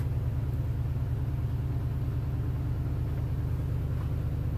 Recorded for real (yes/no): yes